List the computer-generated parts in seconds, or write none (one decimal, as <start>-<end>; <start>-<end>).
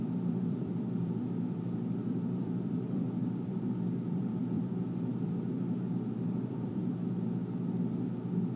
0.0-6.8